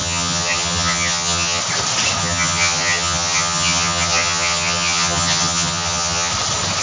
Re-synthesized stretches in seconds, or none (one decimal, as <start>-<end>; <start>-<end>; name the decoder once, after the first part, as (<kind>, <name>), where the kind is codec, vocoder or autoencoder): 0.0-1.6 (vocoder, HiFi-GAN); 2.2-6.3